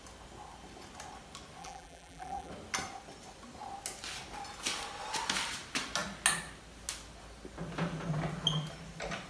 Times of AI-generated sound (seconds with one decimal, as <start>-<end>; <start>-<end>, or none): 1.6-2.5